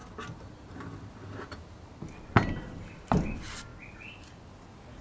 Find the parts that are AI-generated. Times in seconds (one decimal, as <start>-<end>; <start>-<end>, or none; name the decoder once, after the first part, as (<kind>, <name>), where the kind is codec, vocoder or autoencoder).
none